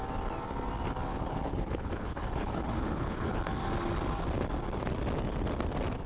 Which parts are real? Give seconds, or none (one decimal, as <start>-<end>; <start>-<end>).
0.0-1.1; 3.4-6.1